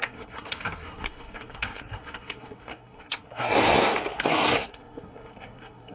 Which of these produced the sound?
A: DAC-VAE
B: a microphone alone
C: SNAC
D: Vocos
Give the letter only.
C